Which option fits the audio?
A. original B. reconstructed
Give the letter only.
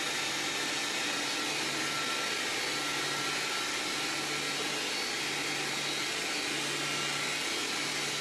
A